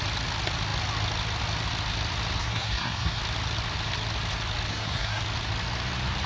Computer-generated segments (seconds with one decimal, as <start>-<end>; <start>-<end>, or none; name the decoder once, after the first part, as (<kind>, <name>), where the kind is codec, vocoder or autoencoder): 2.4-3.2 (codec, SNAC); 4.7-5.2